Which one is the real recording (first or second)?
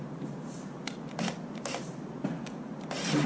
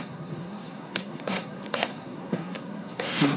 first